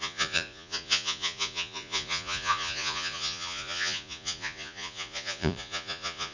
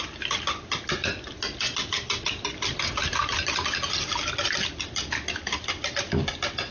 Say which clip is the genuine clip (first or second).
second